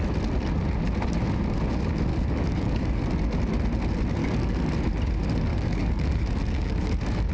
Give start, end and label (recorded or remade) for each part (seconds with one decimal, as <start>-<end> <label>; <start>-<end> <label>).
0.0-2.1 recorded; 2.1-3.0 remade; 3.0-4.2 recorded; 4.2-4.7 remade; 4.7-5.5 recorded; 5.5-7.3 remade